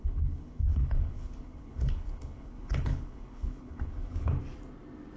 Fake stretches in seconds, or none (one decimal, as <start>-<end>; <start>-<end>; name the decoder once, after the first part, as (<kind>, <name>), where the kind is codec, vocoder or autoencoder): 0.0-4.4 (codec, HILCodec)

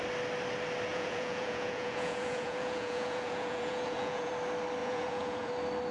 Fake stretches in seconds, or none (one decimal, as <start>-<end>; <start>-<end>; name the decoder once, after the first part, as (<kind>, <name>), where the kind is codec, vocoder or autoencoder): 0.9-4.3 (vocoder, Vocos); 4.8-5.5

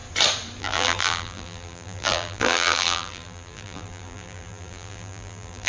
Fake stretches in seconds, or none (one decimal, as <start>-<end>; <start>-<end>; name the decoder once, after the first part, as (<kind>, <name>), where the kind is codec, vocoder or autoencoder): 0.6-5.7 (vocoder, BigVGAN v2)

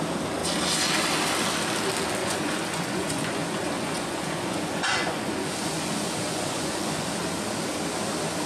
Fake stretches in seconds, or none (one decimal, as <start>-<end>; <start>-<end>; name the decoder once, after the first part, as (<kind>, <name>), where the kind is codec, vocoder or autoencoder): 2.2-7.1 (vocoder, Vocos)

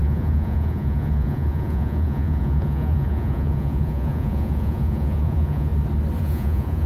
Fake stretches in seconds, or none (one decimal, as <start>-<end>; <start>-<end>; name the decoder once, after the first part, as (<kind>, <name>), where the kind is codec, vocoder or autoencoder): 0.0-5.7 (vocoder, Vocos); 6.2-6.9

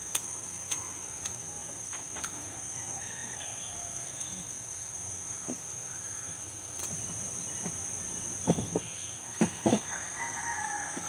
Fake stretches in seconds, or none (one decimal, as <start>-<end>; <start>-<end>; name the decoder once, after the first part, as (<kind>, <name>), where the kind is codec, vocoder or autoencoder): 0.0-6.8 (codec, SNAC); 8.5-11.1

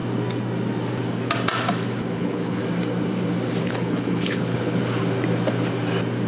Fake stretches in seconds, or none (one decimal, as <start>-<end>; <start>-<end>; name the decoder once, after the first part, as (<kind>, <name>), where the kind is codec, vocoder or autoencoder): 2.1-2.6 (codec, HILCodec); 3.6-4.8

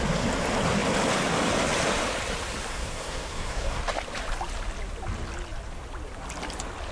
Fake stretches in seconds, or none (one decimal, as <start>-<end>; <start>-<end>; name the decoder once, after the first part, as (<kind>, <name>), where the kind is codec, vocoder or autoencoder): 2.7-3.8 (codec, SNAC)